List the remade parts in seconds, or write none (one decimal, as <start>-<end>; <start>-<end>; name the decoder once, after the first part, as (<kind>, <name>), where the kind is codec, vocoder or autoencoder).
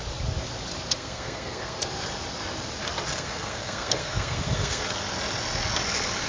0.9-1.9 (codec, SNAC); 3.1-4.8